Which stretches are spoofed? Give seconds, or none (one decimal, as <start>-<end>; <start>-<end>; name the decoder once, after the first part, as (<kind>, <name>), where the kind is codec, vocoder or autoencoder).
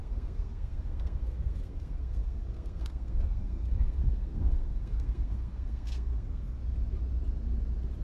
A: 0.0-6.6 (codec, SNAC)